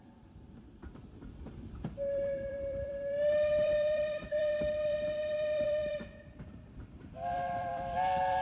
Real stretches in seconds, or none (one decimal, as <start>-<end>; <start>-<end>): none